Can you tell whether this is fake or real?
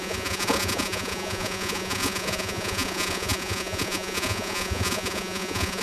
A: fake